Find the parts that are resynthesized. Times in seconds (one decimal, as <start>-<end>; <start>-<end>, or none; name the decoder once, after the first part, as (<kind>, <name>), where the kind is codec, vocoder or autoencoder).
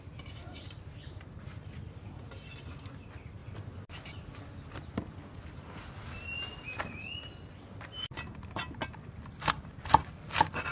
none